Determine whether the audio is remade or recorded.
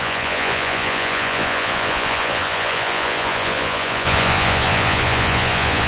remade